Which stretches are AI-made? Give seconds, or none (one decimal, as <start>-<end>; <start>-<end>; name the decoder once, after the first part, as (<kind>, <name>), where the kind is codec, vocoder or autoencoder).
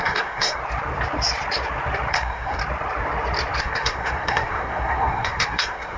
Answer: 0.0-0.6 (codec, SNAC); 2.1-2.6; 3.6-6.0